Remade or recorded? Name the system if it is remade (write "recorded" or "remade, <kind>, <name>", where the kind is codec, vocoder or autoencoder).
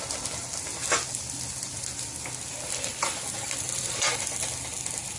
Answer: recorded